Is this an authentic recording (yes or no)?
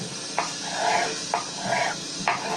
yes